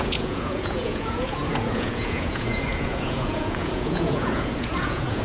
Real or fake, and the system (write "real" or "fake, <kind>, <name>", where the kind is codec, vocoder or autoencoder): fake, vocoder, Vocos